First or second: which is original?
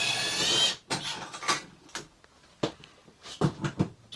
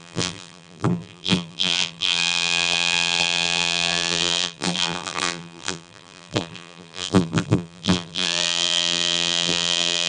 first